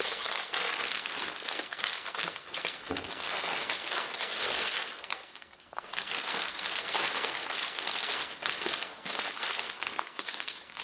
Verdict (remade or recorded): remade